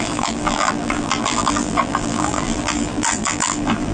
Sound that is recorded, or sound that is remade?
remade